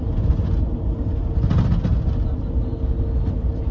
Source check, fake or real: real